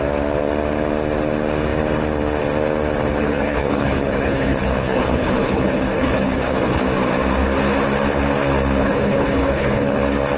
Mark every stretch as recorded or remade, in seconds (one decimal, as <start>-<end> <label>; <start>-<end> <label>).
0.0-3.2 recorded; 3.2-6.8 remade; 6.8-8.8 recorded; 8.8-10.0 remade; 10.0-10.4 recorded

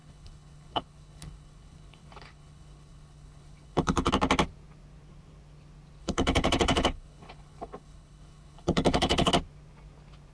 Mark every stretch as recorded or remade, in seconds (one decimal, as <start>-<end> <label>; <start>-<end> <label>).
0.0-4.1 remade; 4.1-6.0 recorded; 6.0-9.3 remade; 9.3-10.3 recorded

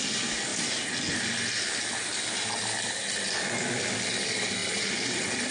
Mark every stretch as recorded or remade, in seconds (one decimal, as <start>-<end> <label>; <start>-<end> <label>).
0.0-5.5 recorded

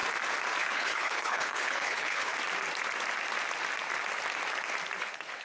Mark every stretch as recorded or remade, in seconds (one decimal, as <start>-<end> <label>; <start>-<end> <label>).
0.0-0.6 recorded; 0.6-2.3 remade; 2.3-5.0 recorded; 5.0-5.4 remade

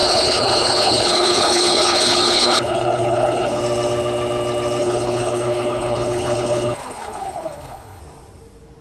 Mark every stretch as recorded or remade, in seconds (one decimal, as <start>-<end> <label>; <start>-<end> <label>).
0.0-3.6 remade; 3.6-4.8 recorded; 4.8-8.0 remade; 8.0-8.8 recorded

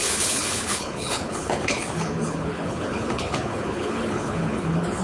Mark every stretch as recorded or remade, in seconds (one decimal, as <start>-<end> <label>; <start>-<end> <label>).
0.0-5.0 remade